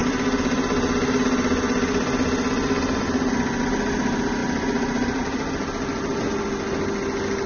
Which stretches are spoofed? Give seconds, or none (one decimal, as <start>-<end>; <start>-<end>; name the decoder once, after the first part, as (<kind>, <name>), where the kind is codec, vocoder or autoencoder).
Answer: none